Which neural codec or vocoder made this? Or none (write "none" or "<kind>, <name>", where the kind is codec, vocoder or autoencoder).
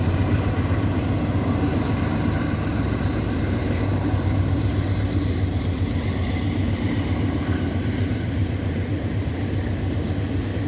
vocoder, BigVGAN v2